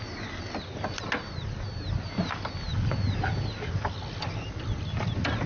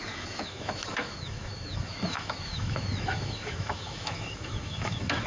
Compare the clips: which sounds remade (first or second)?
second